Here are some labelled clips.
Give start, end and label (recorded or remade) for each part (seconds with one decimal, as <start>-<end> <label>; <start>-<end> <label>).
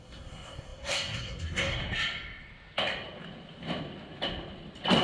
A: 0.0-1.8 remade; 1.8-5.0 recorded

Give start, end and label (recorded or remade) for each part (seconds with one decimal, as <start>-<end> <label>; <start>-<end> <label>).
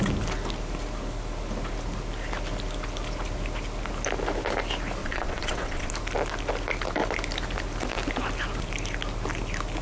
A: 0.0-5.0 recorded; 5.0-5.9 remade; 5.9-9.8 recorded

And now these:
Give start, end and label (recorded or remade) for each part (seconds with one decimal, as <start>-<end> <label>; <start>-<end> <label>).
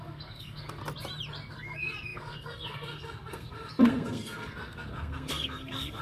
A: 0.0-0.8 remade; 0.8-1.5 recorded; 1.5-6.0 remade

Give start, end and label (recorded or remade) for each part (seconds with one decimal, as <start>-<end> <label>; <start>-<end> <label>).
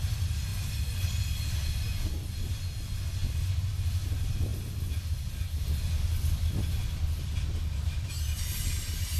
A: 0.0-9.2 recorded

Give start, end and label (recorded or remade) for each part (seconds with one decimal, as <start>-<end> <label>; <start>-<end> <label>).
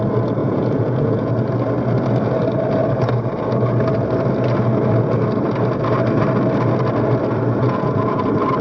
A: 0.0-0.4 recorded; 0.4-1.3 remade; 1.3-7.6 recorded; 7.6-8.2 remade; 8.2-8.6 recorded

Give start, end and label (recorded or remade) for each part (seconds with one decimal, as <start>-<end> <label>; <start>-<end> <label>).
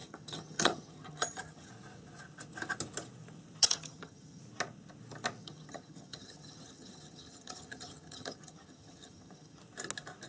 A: 0.0-1.7 remade; 1.7-3.6 recorded; 3.6-4.4 remade; 4.4-5.4 recorded; 5.4-9.6 remade; 9.6-10.3 recorded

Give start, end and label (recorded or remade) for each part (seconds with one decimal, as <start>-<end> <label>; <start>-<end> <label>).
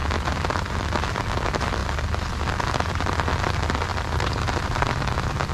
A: 0.0-3.9 recorded; 3.9-4.9 remade; 4.9-5.5 recorded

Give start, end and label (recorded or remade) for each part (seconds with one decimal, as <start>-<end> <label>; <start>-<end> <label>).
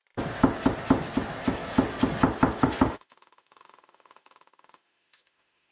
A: 0.0-2.6 recorded; 2.6-5.7 remade